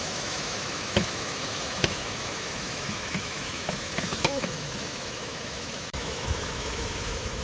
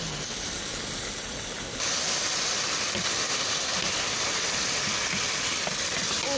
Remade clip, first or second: first